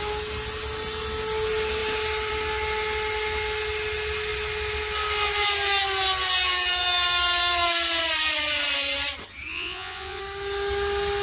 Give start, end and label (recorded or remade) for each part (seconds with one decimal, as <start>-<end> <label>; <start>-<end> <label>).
0.0-9.5 recorded; 9.5-10.2 remade; 10.2-11.2 recorded